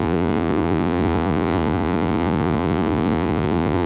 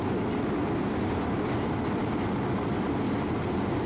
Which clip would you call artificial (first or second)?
first